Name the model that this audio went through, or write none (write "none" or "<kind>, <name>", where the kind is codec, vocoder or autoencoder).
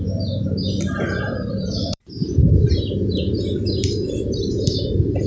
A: vocoder, BigVGAN v2